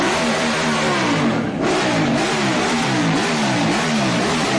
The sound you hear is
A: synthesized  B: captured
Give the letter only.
B